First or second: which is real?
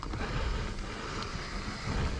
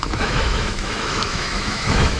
first